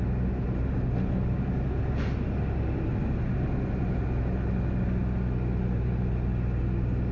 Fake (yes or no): no